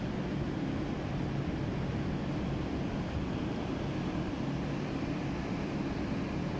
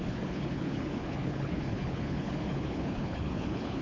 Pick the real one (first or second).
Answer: first